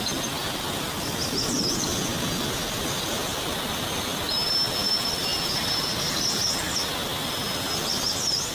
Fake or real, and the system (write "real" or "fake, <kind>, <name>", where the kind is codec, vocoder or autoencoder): real